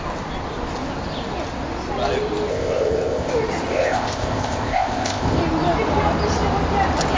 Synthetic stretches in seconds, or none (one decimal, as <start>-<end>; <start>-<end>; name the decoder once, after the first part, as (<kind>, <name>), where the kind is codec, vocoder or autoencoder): 2.5-3.3 (codec, ZipCodec); 3.7-5.4